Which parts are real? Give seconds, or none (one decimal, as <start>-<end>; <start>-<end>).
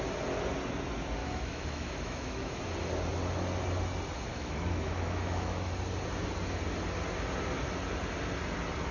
0.0-1.2; 2.6-4.3; 5.7-8.9